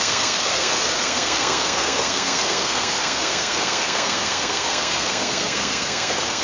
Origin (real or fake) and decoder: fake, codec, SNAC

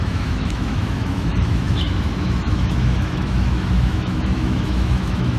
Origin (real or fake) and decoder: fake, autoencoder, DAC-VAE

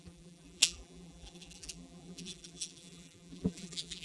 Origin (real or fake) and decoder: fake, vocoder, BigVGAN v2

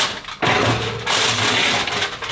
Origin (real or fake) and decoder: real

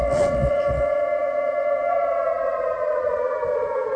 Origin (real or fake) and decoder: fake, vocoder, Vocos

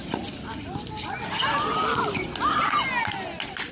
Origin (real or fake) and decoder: real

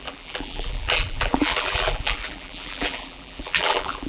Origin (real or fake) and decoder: fake, vocoder, BigVGAN v2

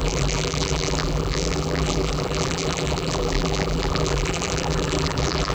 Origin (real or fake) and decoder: fake, vocoder, BigVGAN v2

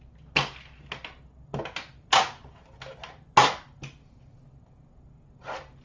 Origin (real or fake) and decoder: real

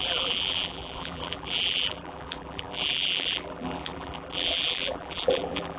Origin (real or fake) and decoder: fake, vocoder, BigVGAN v2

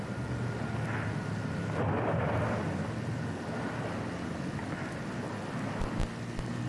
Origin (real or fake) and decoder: real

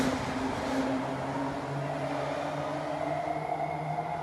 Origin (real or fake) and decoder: real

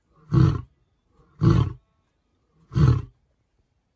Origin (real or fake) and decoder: real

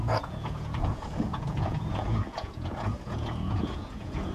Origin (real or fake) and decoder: fake, vocoder, Vocos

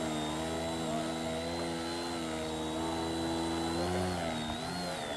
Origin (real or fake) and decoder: real